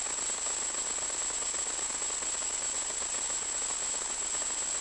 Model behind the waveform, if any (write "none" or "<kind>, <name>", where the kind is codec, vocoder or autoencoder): none